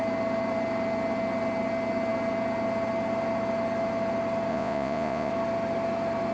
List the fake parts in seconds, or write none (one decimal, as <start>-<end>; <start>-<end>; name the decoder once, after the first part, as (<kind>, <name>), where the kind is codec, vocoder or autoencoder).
4.5-5.3 (vocoder, Vocos)